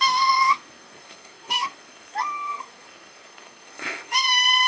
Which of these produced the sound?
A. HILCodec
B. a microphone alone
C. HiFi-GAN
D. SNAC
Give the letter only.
D